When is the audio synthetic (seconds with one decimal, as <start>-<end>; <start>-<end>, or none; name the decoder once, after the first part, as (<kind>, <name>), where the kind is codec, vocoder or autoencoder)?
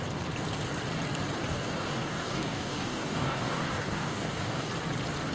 1.5-4.7 (codec, DAC)